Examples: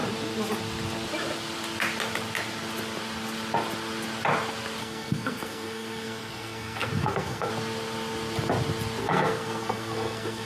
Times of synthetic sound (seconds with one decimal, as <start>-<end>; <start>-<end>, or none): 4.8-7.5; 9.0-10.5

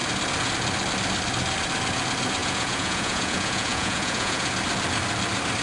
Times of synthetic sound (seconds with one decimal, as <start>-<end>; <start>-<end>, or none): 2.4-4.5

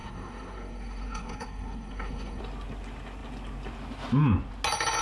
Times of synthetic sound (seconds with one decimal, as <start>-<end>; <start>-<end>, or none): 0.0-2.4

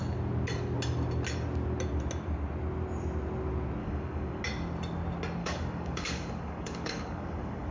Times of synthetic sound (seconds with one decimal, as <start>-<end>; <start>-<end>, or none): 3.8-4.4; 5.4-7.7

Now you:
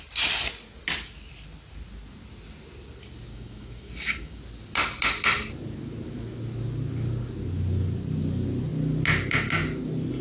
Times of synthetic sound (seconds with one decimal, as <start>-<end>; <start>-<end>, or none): 3.3-4.4

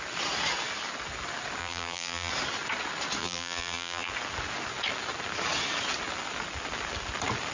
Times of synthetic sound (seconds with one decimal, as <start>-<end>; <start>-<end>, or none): 1.6-2.3; 3.2-4.1

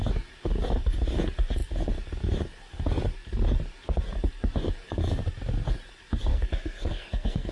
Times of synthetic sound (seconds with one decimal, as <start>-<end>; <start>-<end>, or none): 6.3-7.5

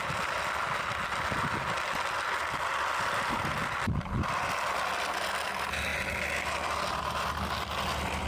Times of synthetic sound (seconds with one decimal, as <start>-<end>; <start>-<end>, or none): none